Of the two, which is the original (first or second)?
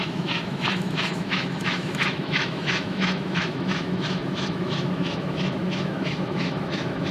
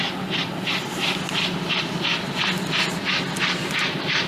second